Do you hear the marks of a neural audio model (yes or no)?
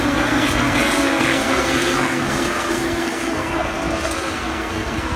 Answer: yes